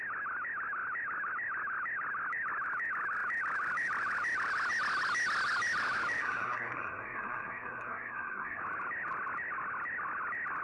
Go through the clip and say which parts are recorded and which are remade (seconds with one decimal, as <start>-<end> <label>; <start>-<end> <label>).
0.0-6.2 recorded; 6.2-8.6 remade; 8.6-10.6 recorded